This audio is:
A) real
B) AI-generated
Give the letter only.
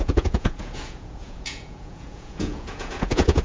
B